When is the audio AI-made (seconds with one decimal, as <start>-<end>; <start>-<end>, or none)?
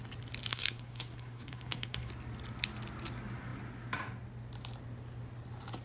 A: 0.5-2.1